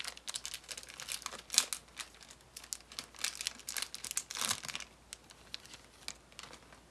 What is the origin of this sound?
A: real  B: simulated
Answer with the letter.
A